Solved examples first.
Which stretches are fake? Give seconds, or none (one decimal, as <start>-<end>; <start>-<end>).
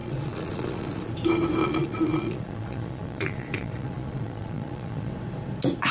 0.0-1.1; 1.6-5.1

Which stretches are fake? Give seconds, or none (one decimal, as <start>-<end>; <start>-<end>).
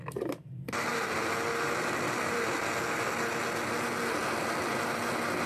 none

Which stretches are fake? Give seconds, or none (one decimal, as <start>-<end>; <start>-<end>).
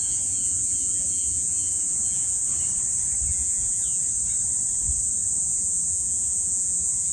0.0-2.4; 3.3-4.0; 5.4-7.1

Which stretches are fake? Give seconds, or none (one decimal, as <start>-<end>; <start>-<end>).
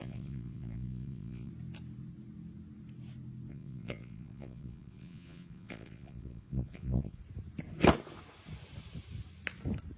0.0-1.5; 3.5-7.2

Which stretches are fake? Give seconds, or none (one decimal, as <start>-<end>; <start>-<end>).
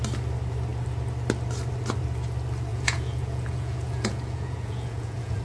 2.7-5.4